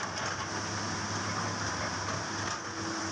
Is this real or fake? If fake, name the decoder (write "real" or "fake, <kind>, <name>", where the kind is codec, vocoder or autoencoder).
real